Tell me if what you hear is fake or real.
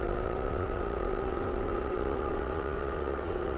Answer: fake